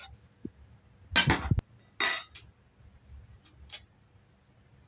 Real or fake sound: real